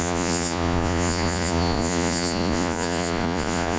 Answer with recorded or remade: remade